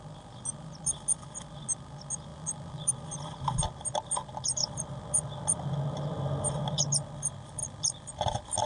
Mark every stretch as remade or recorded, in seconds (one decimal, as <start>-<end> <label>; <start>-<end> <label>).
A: 0.0-2.3 recorded; 2.3-2.9 remade; 2.9-4.6 recorded; 4.6-6.5 remade; 6.5-7.6 recorded; 7.6-8.1 remade; 8.1-8.7 recorded